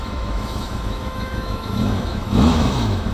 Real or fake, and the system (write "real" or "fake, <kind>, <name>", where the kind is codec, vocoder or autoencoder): fake, autoencoder, DAC-VAE